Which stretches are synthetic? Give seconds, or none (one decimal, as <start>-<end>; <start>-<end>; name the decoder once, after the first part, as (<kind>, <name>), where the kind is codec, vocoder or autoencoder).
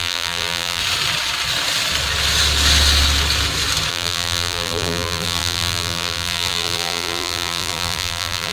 0.0-0.8 (vocoder, BigVGAN v2); 3.9-8.5